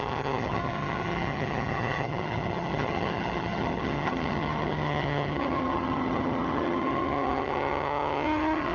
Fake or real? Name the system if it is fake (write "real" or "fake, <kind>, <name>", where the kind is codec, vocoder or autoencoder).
fake, vocoder, HiFi-GAN